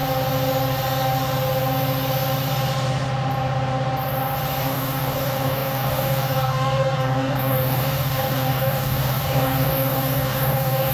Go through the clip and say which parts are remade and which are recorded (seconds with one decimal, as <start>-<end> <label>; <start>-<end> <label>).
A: 0.0-4.6 recorded; 4.6-10.9 remade